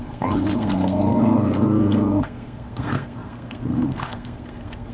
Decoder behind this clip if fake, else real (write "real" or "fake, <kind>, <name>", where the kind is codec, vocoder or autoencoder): fake, codec, SNAC